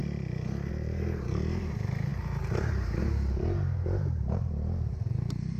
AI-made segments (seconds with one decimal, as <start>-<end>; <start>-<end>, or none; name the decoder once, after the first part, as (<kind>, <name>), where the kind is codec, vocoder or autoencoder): 0.7-5.6 (vocoder, BigVGAN v2)